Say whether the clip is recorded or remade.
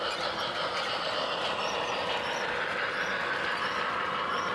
remade